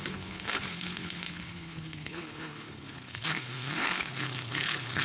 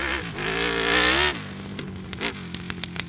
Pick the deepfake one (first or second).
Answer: first